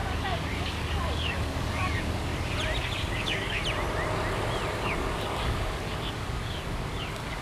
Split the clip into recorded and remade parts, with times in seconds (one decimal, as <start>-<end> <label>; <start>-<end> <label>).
0.0-2.3 remade; 2.3-2.8 recorded; 2.8-3.6 remade; 3.6-4.7 recorded; 4.7-7.4 remade

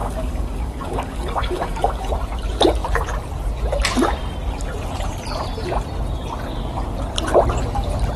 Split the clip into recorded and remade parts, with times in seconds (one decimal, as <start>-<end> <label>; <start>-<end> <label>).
0.0-2.1 remade; 2.1-8.2 recorded